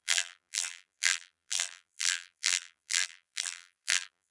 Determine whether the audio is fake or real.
fake